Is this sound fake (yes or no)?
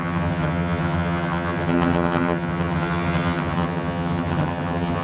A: yes